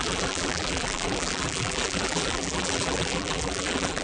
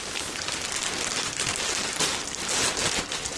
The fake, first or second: first